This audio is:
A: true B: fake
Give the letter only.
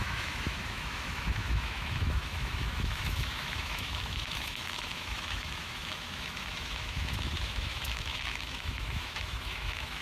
B